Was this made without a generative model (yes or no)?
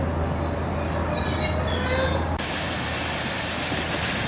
yes